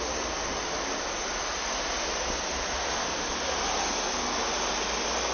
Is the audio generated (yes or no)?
no